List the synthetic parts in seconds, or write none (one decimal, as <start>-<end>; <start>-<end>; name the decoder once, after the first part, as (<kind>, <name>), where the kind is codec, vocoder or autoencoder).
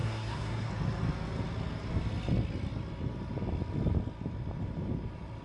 0.0-0.7 (codec, SNAC)